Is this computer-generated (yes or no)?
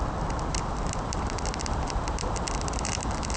yes